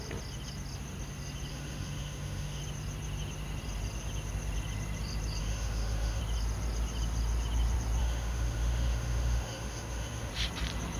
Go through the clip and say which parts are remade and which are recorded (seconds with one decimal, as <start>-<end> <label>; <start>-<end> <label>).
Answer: 0.0-1.5 recorded; 1.5-2.6 remade; 2.6-5.4 recorded; 5.4-6.2 remade; 6.2-8.0 recorded; 8.0-10.3 remade; 10.3-11.0 recorded